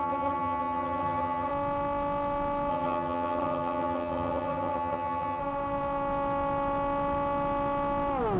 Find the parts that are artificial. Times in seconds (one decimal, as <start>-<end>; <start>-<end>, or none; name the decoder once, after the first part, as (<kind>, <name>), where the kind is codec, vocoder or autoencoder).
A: 0.0-1.5 (vocoder, HiFi-GAN); 2.7-5.4